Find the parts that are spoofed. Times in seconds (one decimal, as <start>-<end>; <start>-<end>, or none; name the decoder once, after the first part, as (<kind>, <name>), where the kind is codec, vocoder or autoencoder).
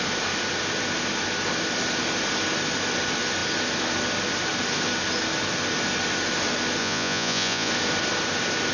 6.8-7.7 (vocoder, Vocos)